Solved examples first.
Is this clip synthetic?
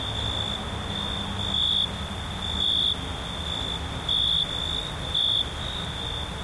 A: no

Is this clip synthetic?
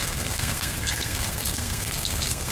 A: yes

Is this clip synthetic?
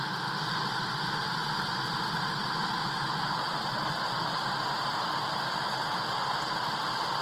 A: no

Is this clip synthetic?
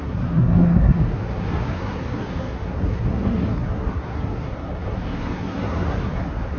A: yes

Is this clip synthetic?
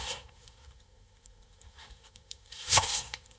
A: yes